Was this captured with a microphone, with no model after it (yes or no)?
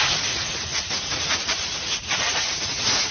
no